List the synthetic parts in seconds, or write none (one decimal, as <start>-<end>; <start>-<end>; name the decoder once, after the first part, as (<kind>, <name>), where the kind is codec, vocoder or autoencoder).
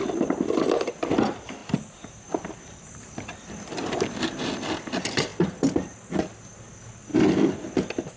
none